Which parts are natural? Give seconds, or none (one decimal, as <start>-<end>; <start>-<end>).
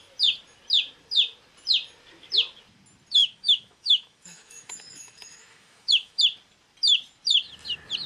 0.0-3.2; 6.2-8.1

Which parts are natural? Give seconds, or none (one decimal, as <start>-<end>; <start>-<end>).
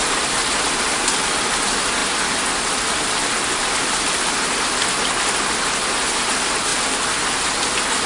0.0-8.1